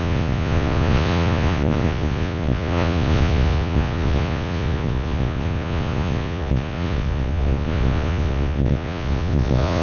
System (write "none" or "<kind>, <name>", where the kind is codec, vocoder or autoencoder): vocoder, Vocos